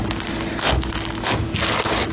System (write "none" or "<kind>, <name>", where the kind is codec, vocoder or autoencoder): none